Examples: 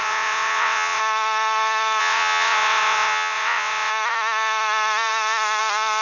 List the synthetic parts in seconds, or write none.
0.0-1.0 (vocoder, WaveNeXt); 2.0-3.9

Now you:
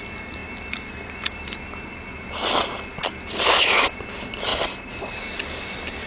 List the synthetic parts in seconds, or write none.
none

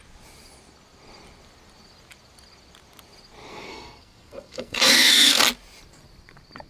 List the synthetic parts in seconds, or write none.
3.5-5.4 (codec, SNAC)